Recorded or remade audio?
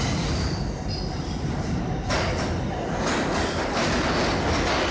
recorded